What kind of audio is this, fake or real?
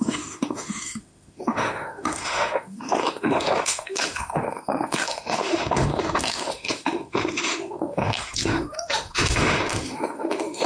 fake